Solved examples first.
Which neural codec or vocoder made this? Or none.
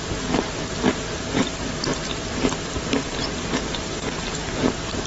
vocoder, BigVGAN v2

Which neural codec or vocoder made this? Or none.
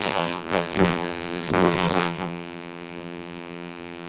vocoder, BigVGAN v2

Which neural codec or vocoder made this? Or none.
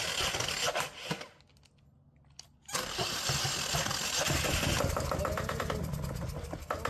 none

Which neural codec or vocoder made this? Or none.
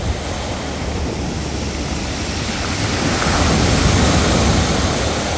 none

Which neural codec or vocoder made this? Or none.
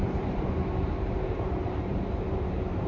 vocoder, BigVGAN v2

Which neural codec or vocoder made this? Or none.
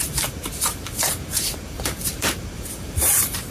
vocoder, BigVGAN v2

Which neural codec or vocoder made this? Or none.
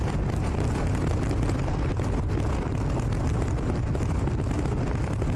none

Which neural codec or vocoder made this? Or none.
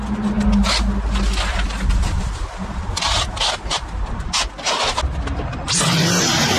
none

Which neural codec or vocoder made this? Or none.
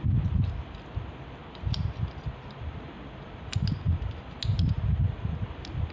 none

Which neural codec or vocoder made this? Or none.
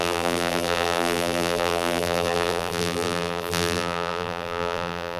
vocoder, BigVGAN v2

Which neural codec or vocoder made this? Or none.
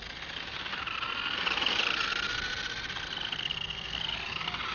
none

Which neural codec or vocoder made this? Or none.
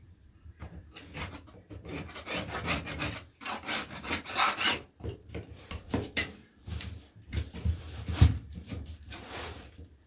vocoder, BigVGAN v2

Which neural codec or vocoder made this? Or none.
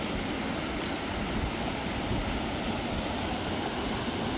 none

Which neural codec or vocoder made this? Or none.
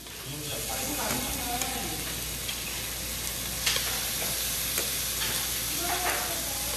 none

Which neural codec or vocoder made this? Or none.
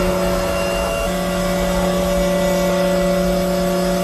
none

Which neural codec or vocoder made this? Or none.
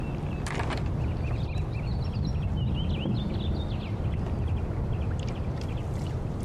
none